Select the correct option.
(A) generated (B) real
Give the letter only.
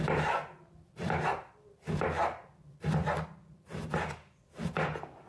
B